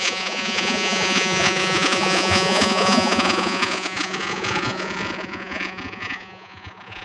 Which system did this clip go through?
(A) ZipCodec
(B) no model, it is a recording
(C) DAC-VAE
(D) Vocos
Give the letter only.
D